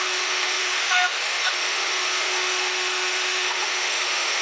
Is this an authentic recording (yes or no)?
no